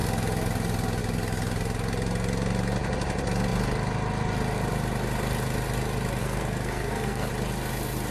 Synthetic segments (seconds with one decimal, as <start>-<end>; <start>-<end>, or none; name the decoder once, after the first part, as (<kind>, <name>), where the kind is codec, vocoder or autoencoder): 6.2-7.3 (codec, SNAC)